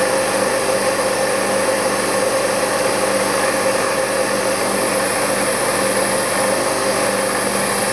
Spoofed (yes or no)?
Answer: no